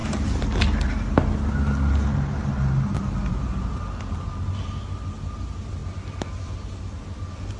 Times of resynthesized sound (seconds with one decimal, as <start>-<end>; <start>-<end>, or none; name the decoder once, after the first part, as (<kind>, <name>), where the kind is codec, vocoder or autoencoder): none